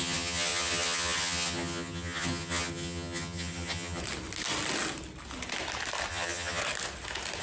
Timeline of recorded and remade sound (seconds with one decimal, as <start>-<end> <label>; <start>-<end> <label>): 0.0-4.0 remade; 4.0-6.1 recorded; 6.1-6.6 remade; 6.6-7.4 recorded